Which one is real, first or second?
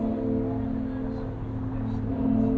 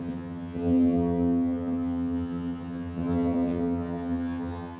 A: first